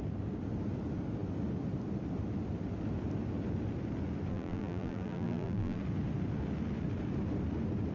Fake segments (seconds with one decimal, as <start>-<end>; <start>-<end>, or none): 4.3-5.8

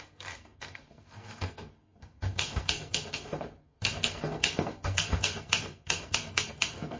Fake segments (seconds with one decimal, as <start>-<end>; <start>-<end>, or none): 0.0-7.0

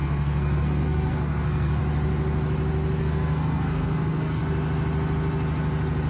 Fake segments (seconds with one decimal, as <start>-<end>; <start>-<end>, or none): 0.0-1.8; 3.0-4.4

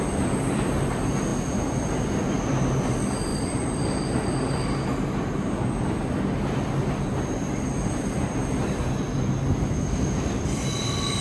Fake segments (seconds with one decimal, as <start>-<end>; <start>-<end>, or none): 3.3-5.9